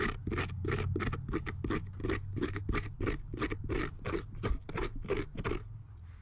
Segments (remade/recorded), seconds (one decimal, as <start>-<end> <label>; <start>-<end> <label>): 0.0-6.2 recorded